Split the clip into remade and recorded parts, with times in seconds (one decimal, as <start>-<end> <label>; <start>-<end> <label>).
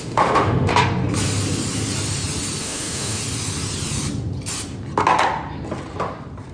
0.0-0.7 remade; 0.7-2.6 recorded; 2.6-3.2 remade; 3.2-6.5 recorded